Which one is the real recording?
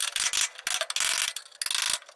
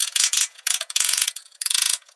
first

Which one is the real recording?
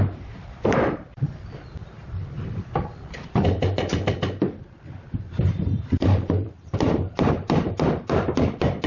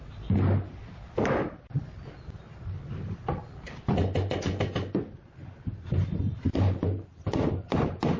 second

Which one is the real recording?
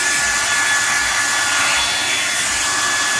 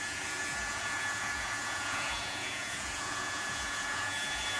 first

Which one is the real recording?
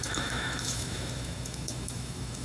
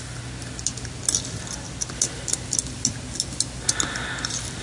second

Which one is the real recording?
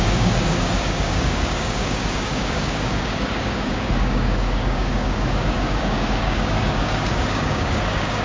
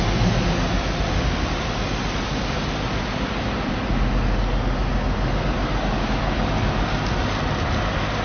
second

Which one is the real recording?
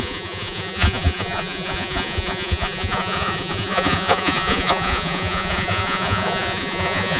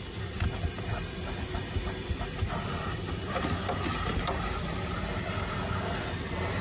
second